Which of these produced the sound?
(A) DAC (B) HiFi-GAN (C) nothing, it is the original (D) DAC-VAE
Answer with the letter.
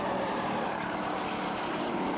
C